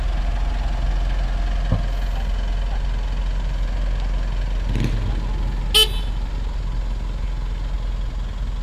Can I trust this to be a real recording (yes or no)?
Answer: yes